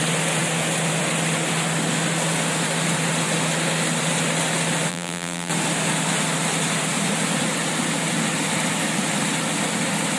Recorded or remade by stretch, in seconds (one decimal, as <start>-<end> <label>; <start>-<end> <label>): 0.0-4.9 recorded; 4.9-5.5 remade; 5.5-10.2 recorded